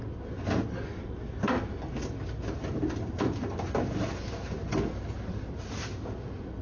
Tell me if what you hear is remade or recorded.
recorded